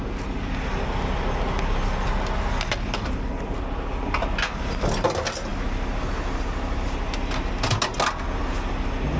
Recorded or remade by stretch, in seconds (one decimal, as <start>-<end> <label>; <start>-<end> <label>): 0.0-9.2 recorded